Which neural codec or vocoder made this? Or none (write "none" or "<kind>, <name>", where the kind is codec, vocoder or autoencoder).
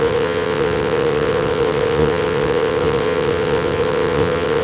vocoder, WaveNeXt